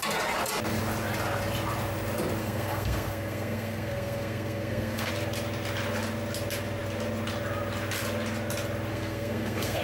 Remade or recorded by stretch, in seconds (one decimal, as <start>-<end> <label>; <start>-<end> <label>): 0.0-2.4 recorded; 2.4-5.1 remade; 5.1-8.9 recorded; 8.9-9.8 remade